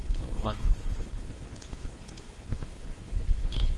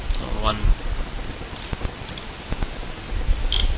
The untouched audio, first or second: second